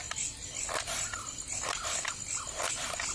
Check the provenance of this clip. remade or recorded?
recorded